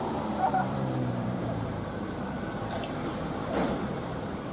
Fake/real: fake